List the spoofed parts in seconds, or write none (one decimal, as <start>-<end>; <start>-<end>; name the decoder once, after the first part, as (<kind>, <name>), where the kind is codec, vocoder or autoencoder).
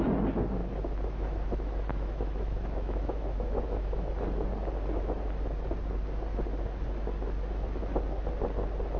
0.6-4.1 (autoencoder, DAC-VAE)